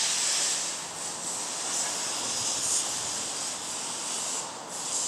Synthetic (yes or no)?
no